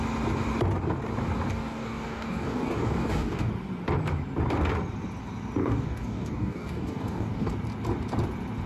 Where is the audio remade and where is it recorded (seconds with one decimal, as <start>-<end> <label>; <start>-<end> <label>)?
0.0-1.5 recorded; 1.5-3.5 remade; 3.5-5.6 recorded; 5.6-7.5 remade; 7.5-8.7 recorded